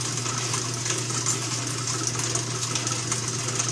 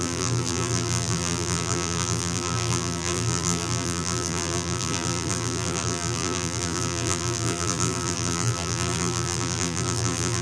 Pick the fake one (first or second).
second